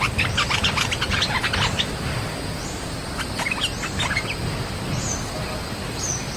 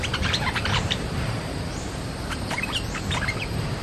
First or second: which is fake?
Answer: second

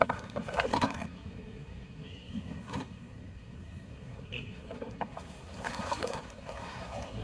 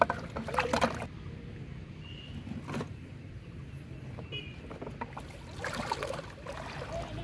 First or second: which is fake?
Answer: first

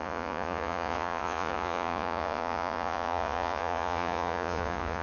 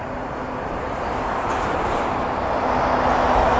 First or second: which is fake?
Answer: first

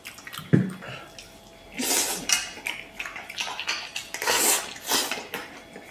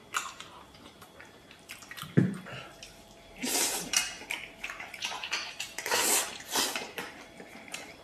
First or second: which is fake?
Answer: second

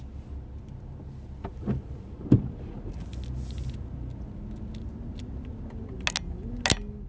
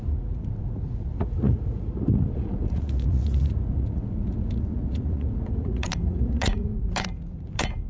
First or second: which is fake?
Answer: second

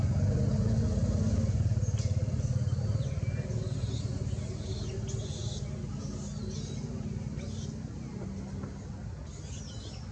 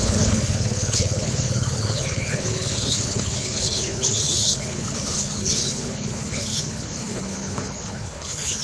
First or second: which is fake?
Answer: second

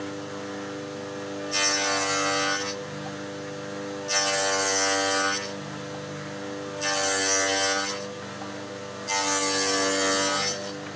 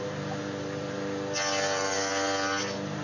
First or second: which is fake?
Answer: second